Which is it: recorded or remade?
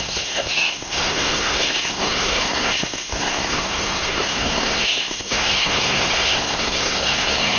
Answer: remade